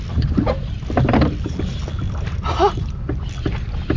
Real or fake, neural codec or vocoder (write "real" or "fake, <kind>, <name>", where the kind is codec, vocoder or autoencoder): real